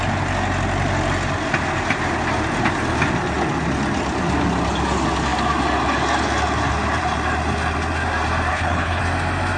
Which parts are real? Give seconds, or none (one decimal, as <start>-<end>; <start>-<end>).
0.0-8.5; 9.0-9.6